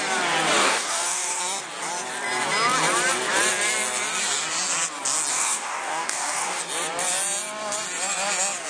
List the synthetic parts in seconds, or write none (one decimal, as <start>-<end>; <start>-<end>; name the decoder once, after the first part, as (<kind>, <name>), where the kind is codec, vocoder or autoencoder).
0.6-1.4 (codec, DAC); 5.3-6.6